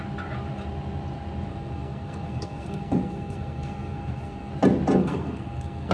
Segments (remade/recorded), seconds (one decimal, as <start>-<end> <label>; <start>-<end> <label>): 0.0-1.5 recorded; 1.5-4.5 remade; 4.5-5.0 recorded; 5.0-5.9 remade